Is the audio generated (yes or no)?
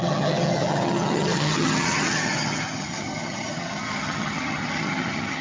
yes